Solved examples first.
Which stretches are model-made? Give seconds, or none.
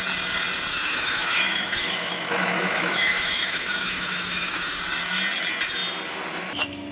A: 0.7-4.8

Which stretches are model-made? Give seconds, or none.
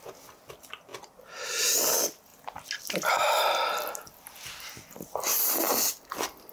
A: none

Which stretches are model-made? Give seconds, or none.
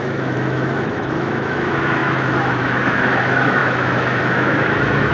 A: 0.0-5.1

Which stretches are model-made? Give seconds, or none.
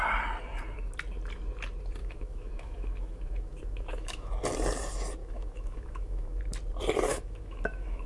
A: 2.0-4.3; 5.2-6.4; 7.1-8.1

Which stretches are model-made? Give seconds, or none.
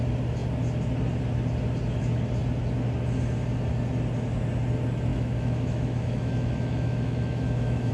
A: 5.1-7.9